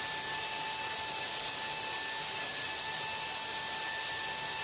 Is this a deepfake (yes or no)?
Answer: no